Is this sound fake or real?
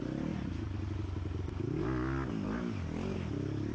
real